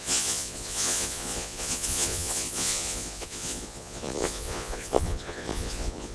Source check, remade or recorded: remade